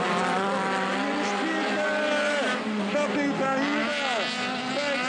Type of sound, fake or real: real